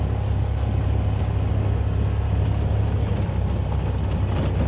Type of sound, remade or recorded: recorded